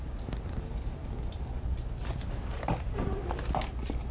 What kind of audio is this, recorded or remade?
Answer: recorded